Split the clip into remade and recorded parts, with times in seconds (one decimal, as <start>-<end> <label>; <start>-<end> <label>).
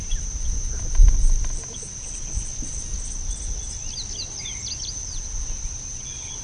0.0-6.4 recorded